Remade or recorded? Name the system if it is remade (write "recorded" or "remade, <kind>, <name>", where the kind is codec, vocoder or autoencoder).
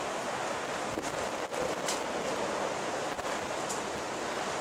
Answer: recorded